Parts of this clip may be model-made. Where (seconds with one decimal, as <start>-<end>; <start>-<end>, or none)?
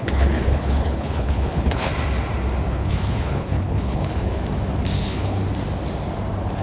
0.0-1.9; 2.7-4.4; 5.0-5.4